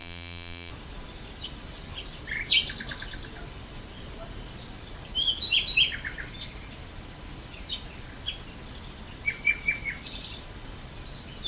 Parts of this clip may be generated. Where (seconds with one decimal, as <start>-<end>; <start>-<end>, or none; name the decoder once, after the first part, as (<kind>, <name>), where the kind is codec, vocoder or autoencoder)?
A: 0.0-0.7 (vocoder, BigVGAN v2)